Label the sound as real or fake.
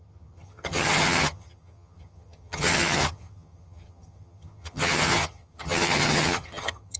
fake